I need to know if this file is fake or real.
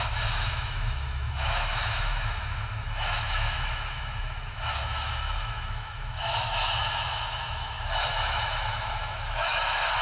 fake